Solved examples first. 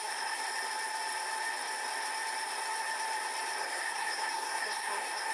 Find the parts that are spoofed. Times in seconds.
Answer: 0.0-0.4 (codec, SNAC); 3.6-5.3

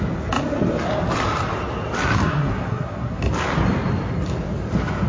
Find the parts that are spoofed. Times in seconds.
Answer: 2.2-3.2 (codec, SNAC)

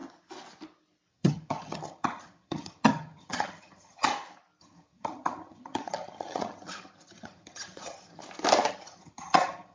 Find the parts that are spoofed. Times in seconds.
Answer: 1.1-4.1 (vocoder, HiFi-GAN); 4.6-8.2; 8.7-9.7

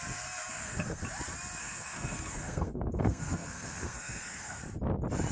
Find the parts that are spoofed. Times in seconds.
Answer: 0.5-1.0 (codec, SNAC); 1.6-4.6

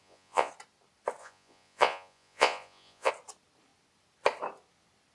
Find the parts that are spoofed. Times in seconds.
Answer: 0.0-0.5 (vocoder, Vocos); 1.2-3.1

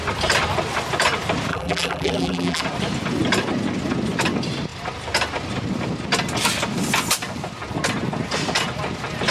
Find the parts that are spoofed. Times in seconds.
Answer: 1.5-2.6 (vocoder, BigVGAN v2)

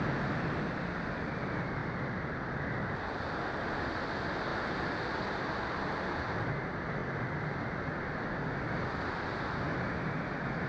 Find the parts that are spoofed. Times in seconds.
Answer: 1.8-2.8 (vocoder, BigVGAN v2)